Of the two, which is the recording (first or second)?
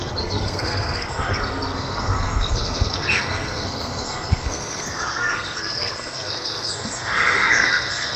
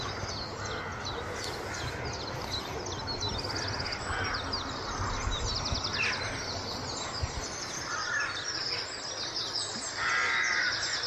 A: second